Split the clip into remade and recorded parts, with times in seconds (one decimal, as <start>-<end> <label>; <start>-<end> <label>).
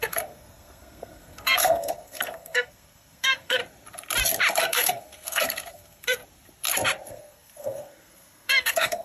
0.0-3.6 remade; 3.6-4.6 recorded; 4.6-6.2 remade; 6.2-7.1 recorded; 7.1-9.0 remade